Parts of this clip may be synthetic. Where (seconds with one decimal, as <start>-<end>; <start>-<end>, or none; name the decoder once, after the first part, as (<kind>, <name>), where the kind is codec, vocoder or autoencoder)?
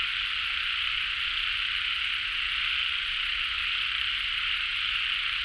none